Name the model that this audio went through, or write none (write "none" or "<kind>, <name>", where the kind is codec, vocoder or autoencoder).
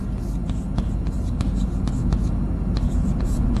none